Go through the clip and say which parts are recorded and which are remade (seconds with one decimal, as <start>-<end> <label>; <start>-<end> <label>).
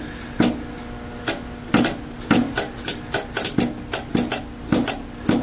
0.0-5.4 recorded